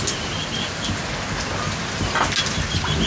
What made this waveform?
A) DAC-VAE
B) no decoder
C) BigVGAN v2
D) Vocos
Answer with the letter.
B